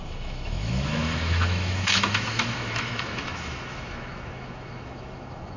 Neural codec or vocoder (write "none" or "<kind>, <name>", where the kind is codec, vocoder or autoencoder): autoencoder, DAC-VAE